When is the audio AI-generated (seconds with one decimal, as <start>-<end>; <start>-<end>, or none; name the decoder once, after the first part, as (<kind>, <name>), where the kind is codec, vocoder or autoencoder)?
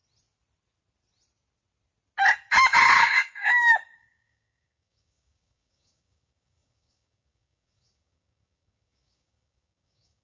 2.5-10.2 (codec, DAC)